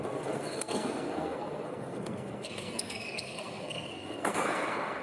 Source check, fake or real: fake